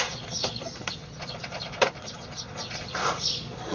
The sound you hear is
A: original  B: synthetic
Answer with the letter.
B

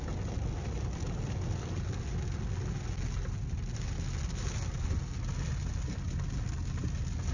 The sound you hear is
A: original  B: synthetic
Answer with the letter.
A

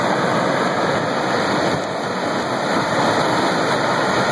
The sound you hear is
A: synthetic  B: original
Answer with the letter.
B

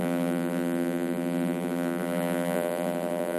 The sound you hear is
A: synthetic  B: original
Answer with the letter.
A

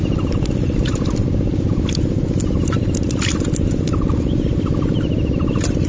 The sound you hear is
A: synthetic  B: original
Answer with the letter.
B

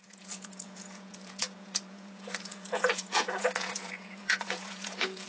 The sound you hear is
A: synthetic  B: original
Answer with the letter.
A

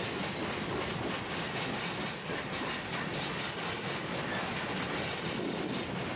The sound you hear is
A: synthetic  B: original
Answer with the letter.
B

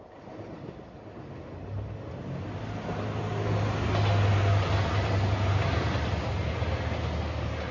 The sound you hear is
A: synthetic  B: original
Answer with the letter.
B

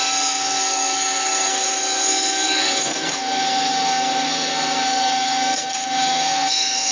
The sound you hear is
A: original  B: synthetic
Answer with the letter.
B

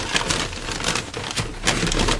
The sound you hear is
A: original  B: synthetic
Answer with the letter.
A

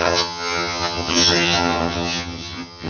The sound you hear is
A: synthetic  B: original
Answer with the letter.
A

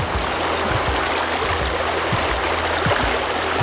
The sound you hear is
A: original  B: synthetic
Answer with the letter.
A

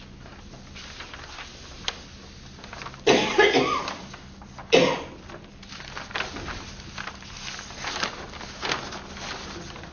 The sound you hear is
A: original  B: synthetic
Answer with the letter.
A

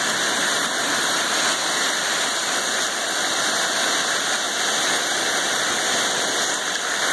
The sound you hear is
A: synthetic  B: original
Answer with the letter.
B